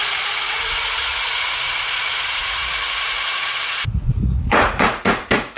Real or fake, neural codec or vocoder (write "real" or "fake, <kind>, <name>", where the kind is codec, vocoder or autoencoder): fake, vocoder, Vocos